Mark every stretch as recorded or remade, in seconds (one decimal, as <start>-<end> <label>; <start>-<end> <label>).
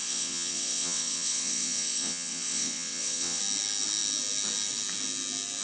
0.0-3.4 remade; 3.4-5.6 recorded